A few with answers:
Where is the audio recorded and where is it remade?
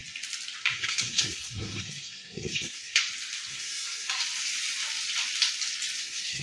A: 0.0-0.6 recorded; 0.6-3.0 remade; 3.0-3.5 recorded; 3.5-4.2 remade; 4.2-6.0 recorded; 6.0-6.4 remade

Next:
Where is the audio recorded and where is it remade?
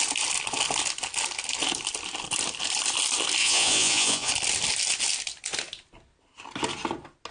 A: 0.0-3.4 recorded; 3.4-4.3 remade; 4.3-7.3 recorded